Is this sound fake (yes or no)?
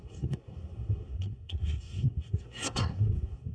yes